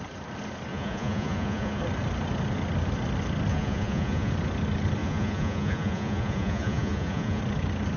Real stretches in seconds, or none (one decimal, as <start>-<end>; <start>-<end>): 0.0-0.7; 1.8-3.5; 4.3-5.0; 7.4-8.0